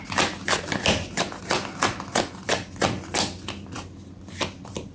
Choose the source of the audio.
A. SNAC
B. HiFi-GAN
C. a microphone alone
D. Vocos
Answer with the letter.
C